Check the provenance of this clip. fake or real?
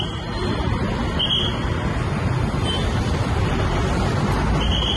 real